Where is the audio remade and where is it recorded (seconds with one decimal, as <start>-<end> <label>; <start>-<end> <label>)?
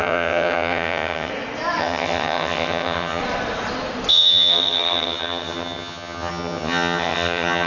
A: 0.0-1.3 remade; 1.3-1.8 recorded; 1.8-3.2 remade; 3.2-4.1 recorded; 4.1-7.7 remade